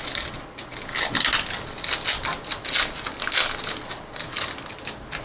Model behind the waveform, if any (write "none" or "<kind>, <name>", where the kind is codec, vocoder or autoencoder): none